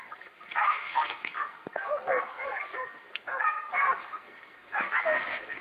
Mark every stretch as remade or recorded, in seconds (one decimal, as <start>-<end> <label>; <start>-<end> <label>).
0.0-5.6 remade